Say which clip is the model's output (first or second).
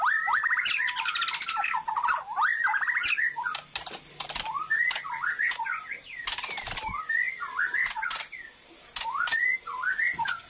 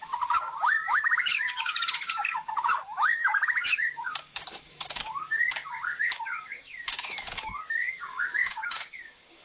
second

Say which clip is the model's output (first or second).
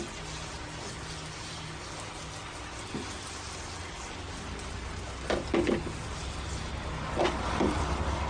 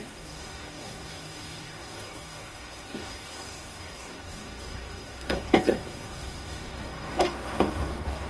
second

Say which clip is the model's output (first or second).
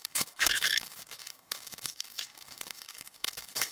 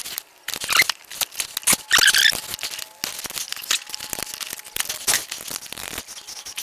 first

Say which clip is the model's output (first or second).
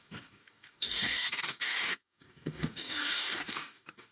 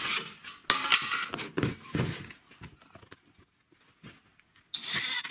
first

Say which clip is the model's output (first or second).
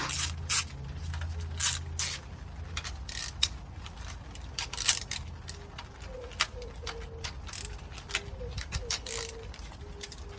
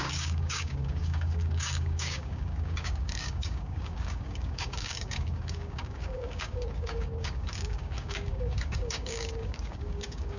second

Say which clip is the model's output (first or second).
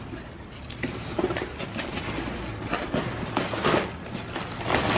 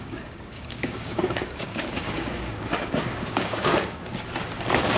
second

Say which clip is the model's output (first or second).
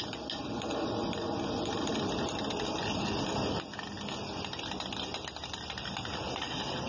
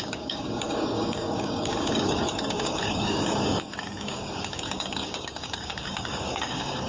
second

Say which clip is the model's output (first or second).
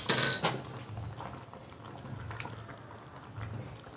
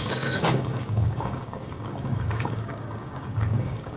second